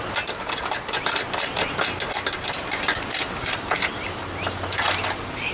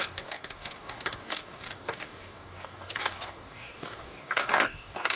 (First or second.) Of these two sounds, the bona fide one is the first